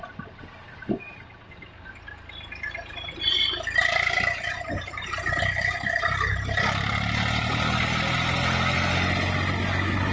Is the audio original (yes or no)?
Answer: yes